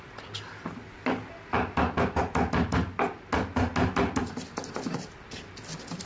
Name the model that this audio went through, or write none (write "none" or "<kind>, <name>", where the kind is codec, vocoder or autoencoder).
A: none